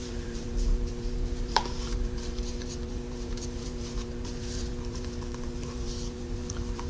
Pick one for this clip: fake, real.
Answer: fake